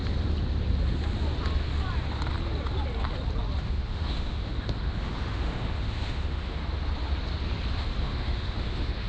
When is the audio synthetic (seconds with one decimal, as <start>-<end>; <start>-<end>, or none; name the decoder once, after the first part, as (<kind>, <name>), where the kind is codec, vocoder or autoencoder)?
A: 3.6-6.6 (autoencoder, DAC-VAE); 8.0-9.1